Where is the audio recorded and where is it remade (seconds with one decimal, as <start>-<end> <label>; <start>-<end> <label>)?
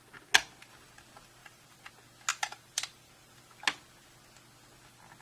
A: 0.0-1.4 recorded; 1.4-1.9 remade; 1.9-2.3 recorded; 2.3-3.6 remade; 3.6-5.2 recorded